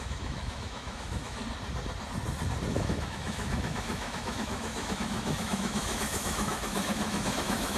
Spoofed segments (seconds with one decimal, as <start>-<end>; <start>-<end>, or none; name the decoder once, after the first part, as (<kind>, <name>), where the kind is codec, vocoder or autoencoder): 0.0-1.4 (autoencoder, DAC-VAE); 2.7-7.8

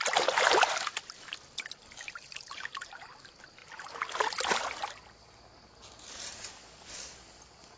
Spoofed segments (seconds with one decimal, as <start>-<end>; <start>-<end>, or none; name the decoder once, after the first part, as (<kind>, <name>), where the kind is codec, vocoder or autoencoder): 3.6-5.5 (vocoder, BigVGAN v2)